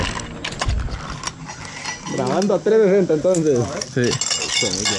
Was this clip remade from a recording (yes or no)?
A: no